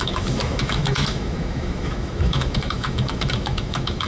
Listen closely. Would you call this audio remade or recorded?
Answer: remade